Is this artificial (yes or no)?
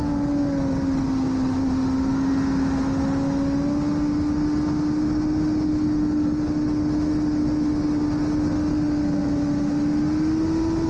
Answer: no